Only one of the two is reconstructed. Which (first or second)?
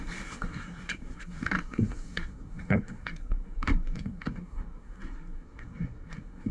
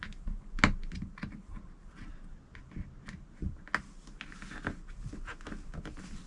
first